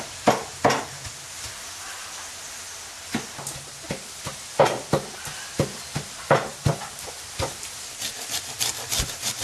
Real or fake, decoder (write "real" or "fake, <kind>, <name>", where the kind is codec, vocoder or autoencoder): real